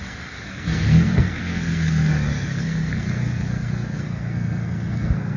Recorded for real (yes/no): no